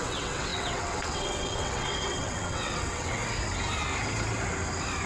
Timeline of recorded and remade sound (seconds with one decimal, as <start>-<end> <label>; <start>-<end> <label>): 0.0-3.2 remade; 3.2-5.1 recorded